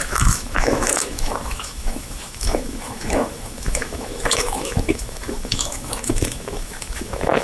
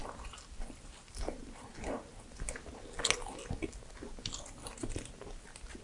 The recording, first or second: second